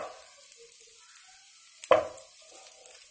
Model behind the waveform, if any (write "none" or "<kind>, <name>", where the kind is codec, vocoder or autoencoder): none